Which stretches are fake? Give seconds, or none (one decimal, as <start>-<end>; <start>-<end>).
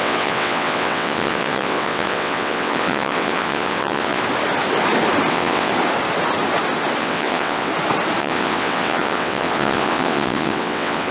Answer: 0.0-4.2; 5.3-5.7; 7.0-7.7; 8.2-11.1